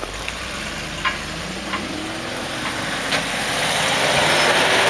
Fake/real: real